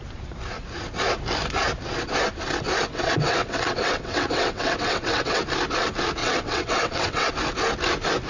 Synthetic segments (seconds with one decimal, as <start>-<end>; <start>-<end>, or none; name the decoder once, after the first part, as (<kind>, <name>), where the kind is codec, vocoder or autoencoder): 2.9-5.4 (vocoder, WaveNeXt); 6.2-7.3